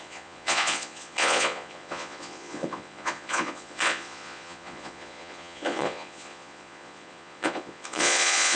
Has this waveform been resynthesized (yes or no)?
yes